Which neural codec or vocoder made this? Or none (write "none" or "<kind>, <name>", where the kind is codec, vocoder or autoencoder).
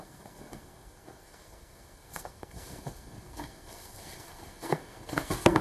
codec, SNAC